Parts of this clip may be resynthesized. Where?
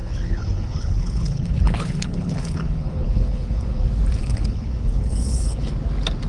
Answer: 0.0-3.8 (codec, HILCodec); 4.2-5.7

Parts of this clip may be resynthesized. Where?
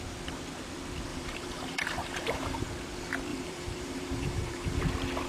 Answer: 1.1-2.6 (vocoder, BigVGAN v2); 3.3-4.8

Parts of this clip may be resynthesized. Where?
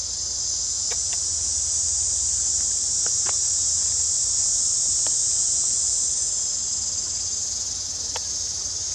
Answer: 5.2-5.9 (vocoder, Vocos)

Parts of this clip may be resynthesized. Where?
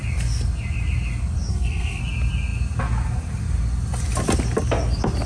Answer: 1.5-2.0 (codec, SNAC)